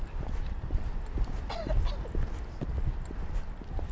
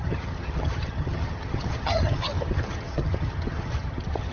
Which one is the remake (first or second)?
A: second